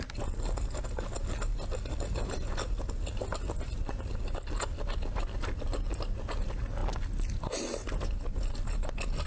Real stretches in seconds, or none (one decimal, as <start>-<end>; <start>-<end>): 0.0-9.3